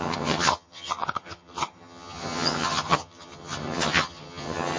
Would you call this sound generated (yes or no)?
yes